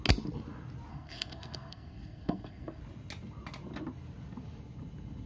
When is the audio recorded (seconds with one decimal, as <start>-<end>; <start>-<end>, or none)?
0.0-0.9; 2.8-5.3